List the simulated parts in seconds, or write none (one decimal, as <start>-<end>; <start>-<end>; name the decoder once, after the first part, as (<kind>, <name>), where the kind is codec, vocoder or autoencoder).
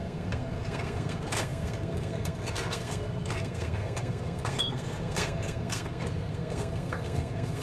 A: 0.0-7.6 (codec, SNAC)